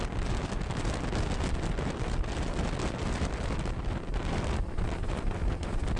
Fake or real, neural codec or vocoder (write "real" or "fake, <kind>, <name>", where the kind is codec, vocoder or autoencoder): real